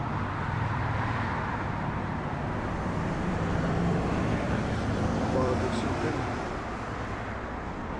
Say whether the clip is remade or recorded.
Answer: remade